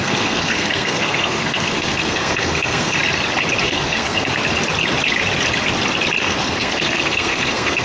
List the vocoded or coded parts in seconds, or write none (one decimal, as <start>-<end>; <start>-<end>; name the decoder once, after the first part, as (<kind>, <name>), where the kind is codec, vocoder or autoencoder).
0.0-3.0 (codec, SNAC); 3.6-4.3; 6.2-7.8